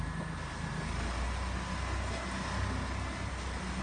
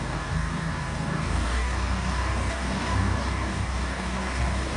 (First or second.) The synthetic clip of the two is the second